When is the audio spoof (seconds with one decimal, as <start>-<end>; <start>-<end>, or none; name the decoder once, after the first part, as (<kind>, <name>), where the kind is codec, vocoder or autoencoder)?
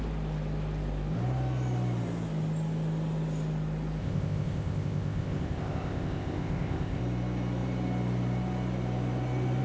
4.0-7.0 (codec, ZipCodec)